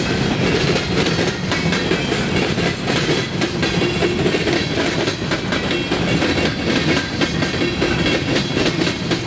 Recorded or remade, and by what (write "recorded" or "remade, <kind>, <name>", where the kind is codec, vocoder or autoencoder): recorded